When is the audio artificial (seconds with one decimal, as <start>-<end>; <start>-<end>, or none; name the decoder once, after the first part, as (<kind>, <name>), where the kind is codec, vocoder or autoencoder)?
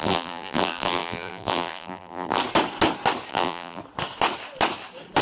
0.0-2.4 (vocoder, BigVGAN v2); 3.3-3.8